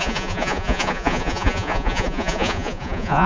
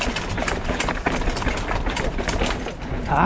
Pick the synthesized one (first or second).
first